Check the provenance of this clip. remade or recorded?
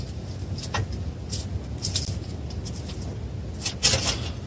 recorded